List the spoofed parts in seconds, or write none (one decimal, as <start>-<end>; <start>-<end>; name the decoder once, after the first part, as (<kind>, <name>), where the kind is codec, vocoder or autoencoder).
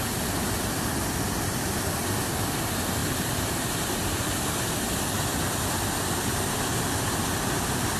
none